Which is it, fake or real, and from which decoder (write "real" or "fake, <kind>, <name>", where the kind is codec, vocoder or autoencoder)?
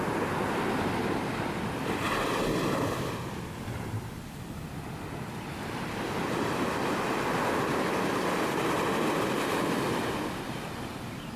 real